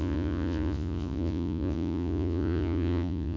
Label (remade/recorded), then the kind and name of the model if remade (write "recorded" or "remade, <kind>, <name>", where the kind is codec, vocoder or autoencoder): remade, vocoder, Vocos